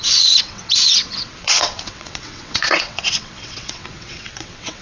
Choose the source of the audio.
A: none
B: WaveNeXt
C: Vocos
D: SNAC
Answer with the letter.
B